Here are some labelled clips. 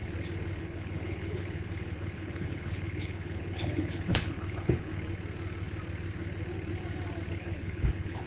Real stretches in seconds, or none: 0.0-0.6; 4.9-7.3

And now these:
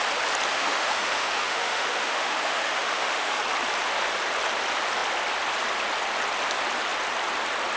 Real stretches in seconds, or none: 0.0-0.5; 3.4-7.8